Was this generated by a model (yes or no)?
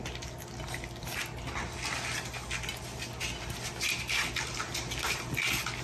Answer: no